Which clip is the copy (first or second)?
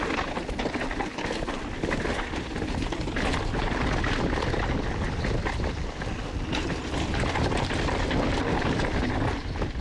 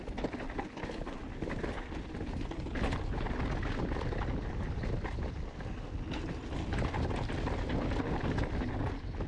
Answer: first